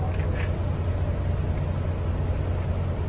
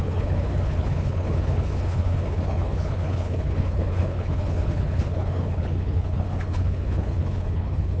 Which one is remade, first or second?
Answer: second